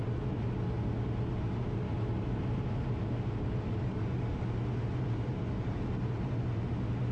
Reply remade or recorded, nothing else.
recorded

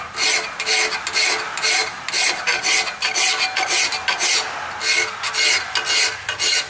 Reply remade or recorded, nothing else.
recorded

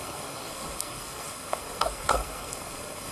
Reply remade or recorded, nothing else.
remade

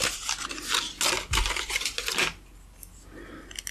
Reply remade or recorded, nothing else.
recorded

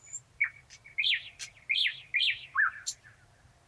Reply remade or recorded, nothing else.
recorded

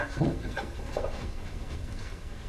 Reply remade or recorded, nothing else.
remade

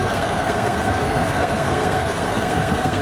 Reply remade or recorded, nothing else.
remade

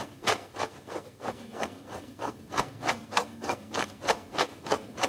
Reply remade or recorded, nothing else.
remade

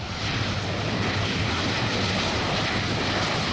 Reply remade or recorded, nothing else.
recorded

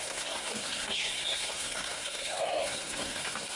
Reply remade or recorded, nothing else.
remade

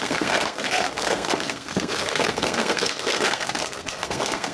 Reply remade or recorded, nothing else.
remade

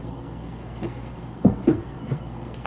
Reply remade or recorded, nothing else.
remade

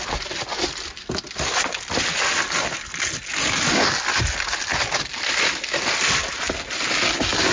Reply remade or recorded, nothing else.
recorded